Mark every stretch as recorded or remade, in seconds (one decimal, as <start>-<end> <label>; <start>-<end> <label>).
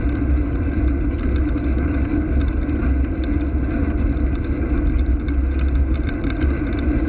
0.0-7.1 recorded